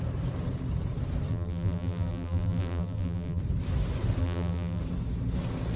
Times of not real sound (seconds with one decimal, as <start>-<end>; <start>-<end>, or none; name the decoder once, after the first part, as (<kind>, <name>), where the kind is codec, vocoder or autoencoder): 1.3-3.4 (vocoder, BigVGAN v2); 4.2-4.8